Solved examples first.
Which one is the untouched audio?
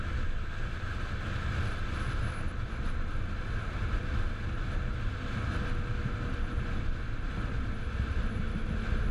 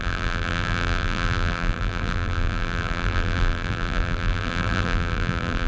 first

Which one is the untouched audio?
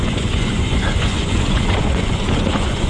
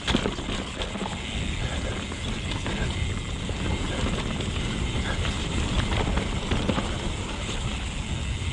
second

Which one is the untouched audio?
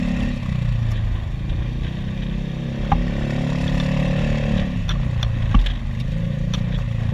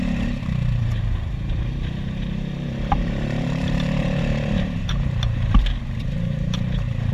first